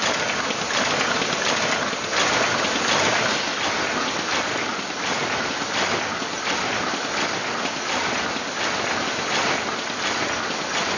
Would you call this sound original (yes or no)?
yes